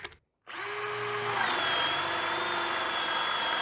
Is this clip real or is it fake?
real